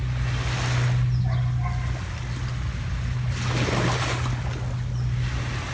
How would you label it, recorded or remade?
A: recorded